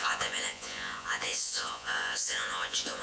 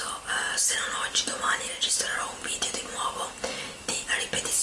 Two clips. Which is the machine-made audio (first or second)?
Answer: first